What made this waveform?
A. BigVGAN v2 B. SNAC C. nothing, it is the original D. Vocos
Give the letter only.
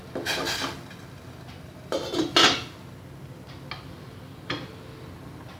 C